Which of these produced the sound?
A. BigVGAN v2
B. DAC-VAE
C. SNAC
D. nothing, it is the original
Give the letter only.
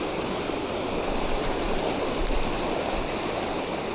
D